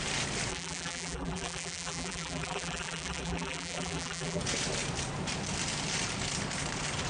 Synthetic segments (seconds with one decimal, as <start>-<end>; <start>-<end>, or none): 0.5-4.4